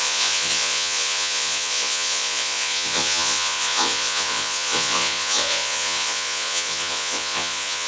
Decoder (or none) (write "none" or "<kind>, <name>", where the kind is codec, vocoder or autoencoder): vocoder, Vocos